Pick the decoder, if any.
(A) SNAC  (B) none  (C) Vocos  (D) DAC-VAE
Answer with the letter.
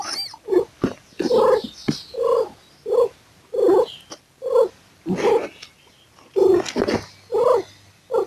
B